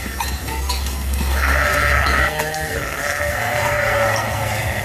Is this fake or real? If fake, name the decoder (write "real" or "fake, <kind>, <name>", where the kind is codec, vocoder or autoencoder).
fake, codec, SNAC